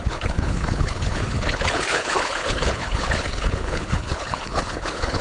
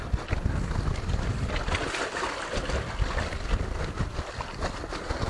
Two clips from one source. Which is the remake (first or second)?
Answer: first